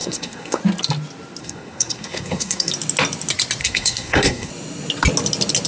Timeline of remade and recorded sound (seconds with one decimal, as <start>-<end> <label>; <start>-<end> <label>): 0.0-0.6 remade; 0.6-1.4 recorded; 1.4-2.7 remade; 2.7-3.6 recorded; 3.6-4.5 remade; 4.5-5.7 recorded